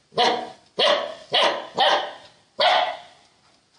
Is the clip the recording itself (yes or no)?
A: yes